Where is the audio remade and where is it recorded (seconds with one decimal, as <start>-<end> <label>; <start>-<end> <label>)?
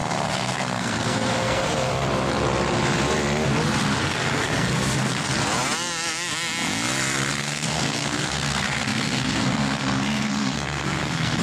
0.0-1.9 remade; 1.9-4.0 recorded; 4.0-5.3 remade; 5.3-7.3 recorded; 7.3-11.4 remade